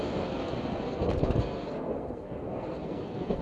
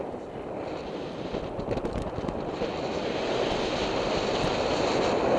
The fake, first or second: first